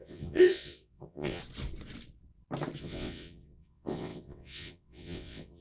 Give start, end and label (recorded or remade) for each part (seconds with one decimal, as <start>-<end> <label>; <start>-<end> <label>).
0.0-1.4 remade; 1.4-2.8 recorded; 2.8-5.6 remade